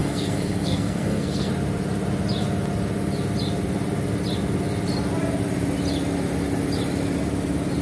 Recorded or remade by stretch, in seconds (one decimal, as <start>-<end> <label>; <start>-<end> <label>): 0.0-1.5 remade; 1.5-7.8 recorded